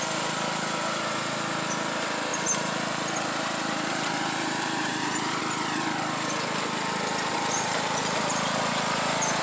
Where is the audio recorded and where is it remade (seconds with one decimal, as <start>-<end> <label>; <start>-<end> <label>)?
0.0-2.3 recorded; 2.3-5.4 remade; 5.4-7.3 recorded; 7.3-8.7 remade; 8.7-9.4 recorded